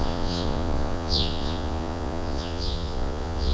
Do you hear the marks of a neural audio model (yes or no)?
yes